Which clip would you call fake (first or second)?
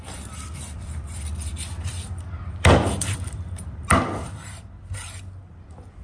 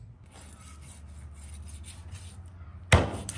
first